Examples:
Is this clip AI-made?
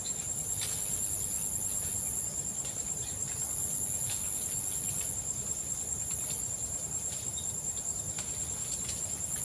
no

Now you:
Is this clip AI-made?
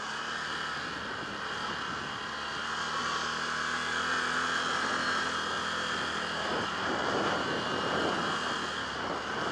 no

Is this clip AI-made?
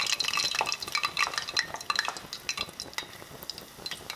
no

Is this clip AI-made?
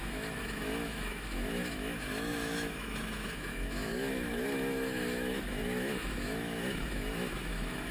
yes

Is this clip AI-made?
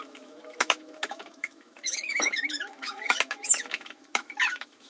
yes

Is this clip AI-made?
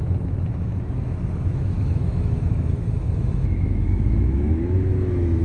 yes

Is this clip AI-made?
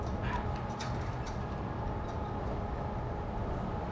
no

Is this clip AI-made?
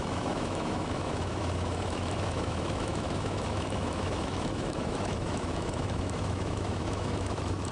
yes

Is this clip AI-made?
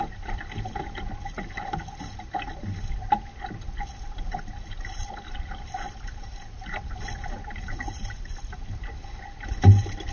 no